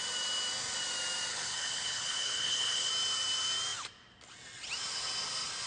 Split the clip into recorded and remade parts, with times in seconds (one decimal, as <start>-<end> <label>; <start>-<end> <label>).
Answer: 0.0-1.3 recorded; 1.3-2.9 remade; 2.9-5.7 recorded